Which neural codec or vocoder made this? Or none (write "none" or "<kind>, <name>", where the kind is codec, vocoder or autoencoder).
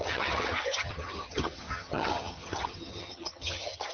vocoder, HiFi-GAN